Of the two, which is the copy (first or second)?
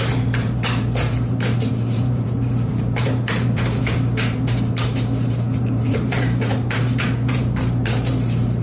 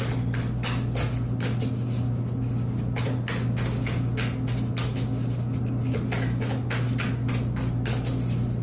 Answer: first